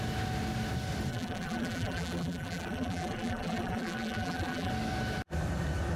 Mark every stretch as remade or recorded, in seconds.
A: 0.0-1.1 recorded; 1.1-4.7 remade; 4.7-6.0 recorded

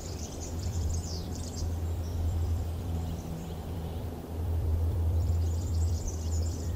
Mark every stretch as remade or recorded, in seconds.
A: 0.0-6.8 remade

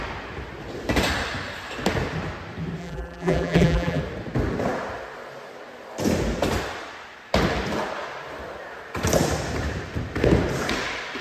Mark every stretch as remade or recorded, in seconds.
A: 0.0-2.8 recorded; 2.8-4.0 remade; 4.0-11.2 recorded

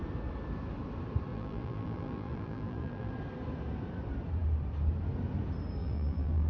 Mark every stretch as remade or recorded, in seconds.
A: 0.0-1.3 recorded; 1.3-3.1 remade; 3.1-5.8 recorded; 5.8-6.5 remade

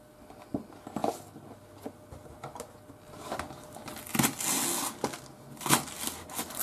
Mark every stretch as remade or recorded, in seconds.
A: 0.0-6.6 recorded

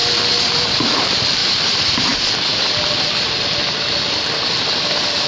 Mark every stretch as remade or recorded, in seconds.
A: 0.0-0.5 recorded; 0.5-1.4 remade; 1.4-4.6 recorded; 4.6-5.3 remade